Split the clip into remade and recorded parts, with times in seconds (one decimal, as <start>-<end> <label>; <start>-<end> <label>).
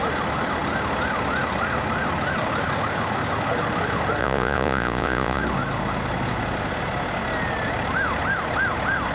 0.0-4.2 recorded; 4.2-5.4 remade; 5.4-9.1 recorded